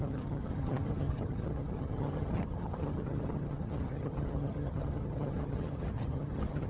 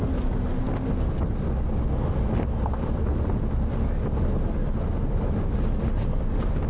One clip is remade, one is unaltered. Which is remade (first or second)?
first